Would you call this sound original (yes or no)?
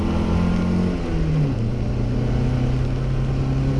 yes